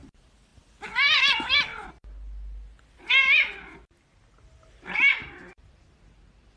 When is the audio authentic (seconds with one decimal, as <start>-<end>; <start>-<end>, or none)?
1.7-4.7